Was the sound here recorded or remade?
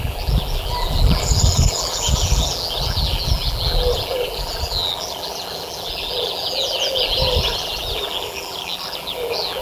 remade